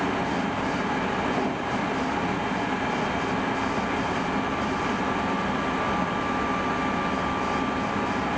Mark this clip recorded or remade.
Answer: recorded